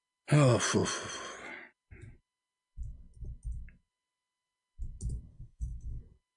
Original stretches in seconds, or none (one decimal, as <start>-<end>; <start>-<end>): 0.0-5.3; 6.0-6.4